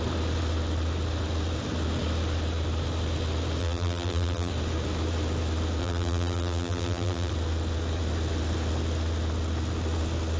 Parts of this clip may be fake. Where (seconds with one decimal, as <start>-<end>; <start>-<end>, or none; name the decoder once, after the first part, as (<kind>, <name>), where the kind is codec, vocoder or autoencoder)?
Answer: 3.6-4.5 (vocoder, BigVGAN v2); 5.8-7.3